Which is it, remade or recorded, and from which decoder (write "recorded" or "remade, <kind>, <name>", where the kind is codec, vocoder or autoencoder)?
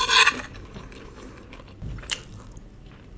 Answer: recorded